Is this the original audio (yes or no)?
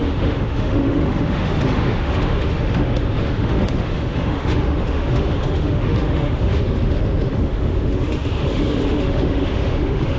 no